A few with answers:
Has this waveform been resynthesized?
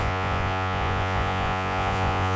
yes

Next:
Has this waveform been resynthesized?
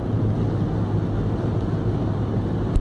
no